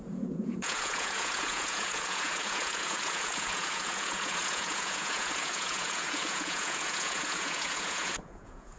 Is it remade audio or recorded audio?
remade